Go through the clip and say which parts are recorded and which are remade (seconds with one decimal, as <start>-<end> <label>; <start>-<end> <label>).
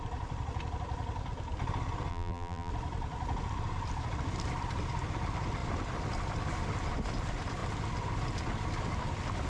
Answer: 0.0-2.1 recorded; 2.1-2.7 remade; 2.7-9.5 recorded